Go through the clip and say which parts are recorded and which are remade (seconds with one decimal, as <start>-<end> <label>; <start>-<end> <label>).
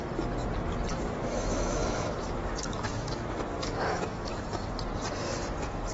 0.0-0.9 recorded; 0.9-4.4 remade; 4.4-5.9 recorded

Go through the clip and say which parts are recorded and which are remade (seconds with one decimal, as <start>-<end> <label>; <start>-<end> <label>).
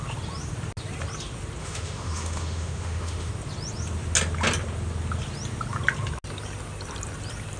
0.0-1.6 recorded; 1.6-3.3 remade; 3.3-7.6 recorded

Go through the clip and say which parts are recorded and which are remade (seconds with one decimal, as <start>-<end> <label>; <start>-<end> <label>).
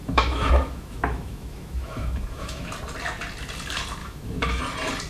0.0-2.7 remade; 2.7-4.0 recorded; 4.0-4.6 remade; 4.6-5.1 recorded